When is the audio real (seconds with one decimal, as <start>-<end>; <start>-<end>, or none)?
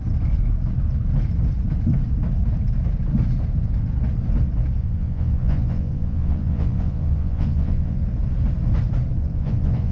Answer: 0.0-4.8; 8.0-9.2